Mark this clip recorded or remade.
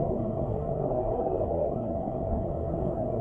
remade